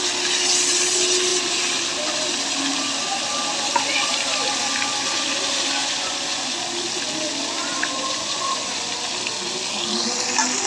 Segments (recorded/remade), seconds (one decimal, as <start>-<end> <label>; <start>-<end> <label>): 0.0-5.8 recorded; 5.8-6.6 remade; 6.6-7.6 recorded; 7.6-8.9 remade; 8.9-10.7 recorded